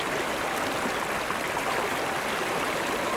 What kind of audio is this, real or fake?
real